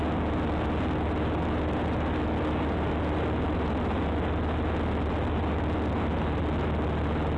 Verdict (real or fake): real